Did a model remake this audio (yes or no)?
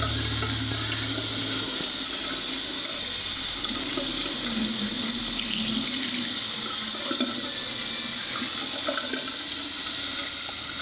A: no